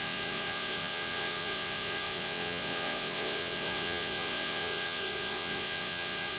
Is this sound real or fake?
fake